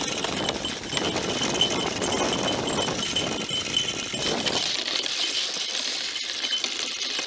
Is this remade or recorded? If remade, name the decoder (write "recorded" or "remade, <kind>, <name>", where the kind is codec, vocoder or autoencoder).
recorded